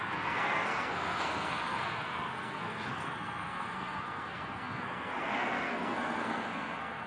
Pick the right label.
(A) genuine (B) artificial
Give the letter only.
B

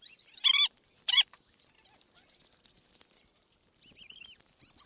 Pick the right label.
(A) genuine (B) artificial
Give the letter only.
A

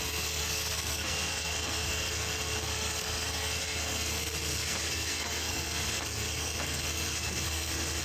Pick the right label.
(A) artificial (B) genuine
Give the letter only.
A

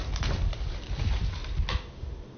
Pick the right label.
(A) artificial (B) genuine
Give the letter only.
B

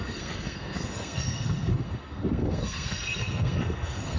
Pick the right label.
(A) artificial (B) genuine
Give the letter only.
A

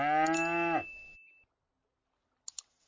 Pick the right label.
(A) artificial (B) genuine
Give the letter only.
B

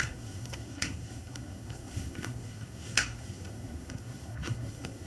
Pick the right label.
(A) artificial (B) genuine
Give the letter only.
A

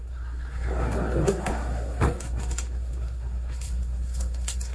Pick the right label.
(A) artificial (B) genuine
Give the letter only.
A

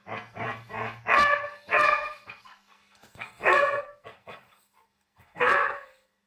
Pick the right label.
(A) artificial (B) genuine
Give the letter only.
A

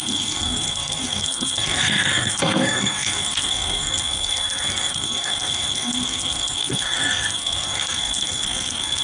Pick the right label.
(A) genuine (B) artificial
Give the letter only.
B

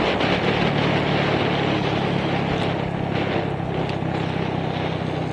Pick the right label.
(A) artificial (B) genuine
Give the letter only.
B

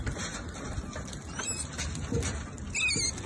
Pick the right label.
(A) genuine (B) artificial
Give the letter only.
A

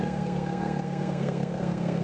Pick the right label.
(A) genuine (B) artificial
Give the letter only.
B